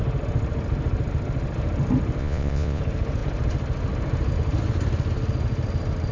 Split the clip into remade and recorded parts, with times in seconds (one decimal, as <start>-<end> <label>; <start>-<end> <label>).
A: 0.0-2.2 recorded; 2.2-2.8 remade; 2.8-6.1 recorded